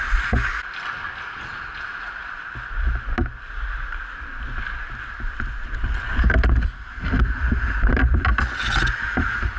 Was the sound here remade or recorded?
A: recorded